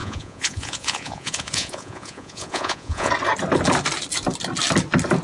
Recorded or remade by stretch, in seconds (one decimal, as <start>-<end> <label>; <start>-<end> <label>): 0.0-3.1 remade; 3.1-5.2 recorded